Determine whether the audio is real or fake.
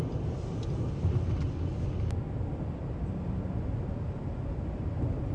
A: real